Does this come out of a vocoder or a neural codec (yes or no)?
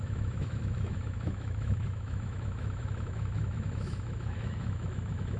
yes